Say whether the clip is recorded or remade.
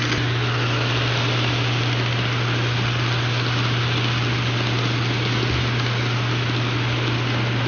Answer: recorded